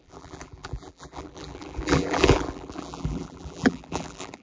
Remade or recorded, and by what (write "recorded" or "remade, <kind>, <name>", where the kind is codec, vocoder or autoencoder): remade, vocoder, BigVGAN v2